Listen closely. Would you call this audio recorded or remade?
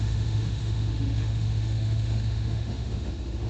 remade